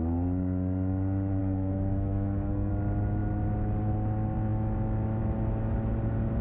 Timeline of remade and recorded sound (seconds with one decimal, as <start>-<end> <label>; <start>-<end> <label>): 0.0-1.4 recorded; 1.4-2.7 remade; 2.7-6.4 recorded